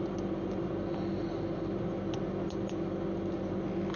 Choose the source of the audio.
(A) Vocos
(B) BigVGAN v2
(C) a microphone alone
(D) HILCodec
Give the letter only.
C